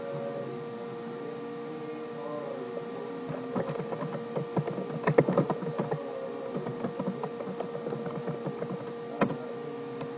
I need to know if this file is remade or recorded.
recorded